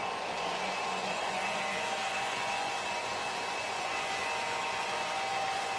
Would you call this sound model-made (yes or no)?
yes